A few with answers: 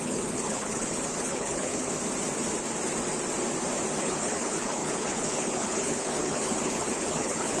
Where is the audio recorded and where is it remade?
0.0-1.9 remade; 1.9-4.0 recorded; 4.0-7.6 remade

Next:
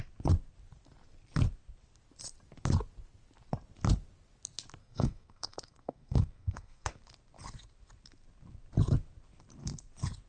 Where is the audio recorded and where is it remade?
0.0-4.8 recorded; 4.8-7.0 remade; 7.0-10.3 recorded

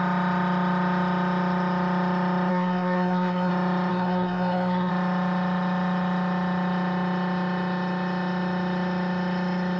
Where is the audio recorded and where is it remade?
0.0-2.5 recorded; 2.5-3.5 remade; 3.5-3.9 recorded; 3.9-4.9 remade; 4.9-9.8 recorded